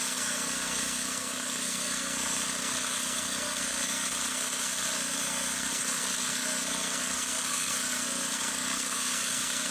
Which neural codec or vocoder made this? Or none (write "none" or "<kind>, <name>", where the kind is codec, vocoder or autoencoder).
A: codec, SNAC